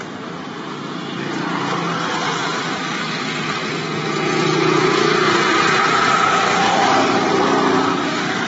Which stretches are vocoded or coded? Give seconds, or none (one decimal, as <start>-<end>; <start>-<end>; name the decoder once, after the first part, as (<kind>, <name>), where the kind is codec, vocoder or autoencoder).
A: 3.6-6.1 (vocoder, Vocos)